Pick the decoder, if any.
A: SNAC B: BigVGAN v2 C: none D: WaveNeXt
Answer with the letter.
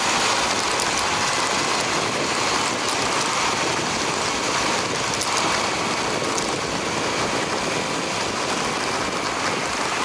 C